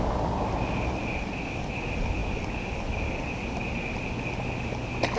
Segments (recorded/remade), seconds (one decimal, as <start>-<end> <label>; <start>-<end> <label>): 0.0-5.2 recorded